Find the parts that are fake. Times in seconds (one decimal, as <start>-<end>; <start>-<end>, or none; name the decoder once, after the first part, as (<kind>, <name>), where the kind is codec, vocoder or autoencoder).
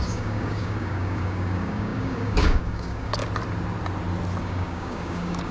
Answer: 0.0-3.2 (codec, DAC); 4.4-5.5